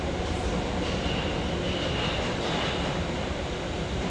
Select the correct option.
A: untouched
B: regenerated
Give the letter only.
A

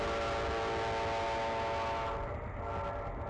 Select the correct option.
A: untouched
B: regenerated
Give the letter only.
A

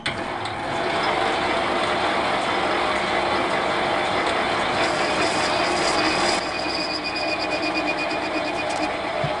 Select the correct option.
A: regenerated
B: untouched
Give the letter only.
B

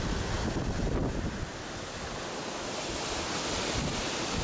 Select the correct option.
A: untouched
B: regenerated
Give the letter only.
A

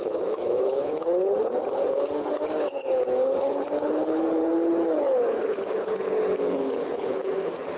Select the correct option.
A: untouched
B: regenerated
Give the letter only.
B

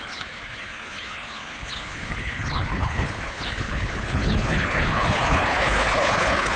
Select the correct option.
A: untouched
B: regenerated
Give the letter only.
B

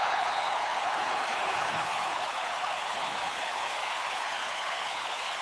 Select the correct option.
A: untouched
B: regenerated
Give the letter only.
B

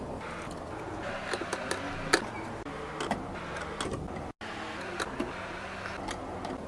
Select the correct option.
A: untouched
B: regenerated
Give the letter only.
A